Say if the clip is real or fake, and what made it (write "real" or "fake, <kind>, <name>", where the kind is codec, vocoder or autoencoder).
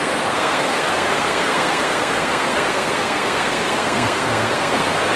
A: fake, codec, SNAC